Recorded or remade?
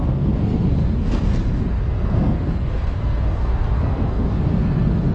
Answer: remade